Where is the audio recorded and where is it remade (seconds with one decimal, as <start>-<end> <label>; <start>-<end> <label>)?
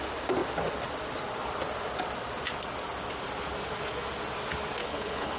0.0-4.8 recorded; 4.8-5.4 remade